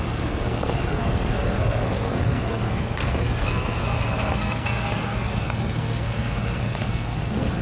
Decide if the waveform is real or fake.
fake